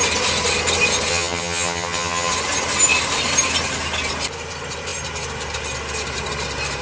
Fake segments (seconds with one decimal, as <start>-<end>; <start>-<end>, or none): 1.1-2.3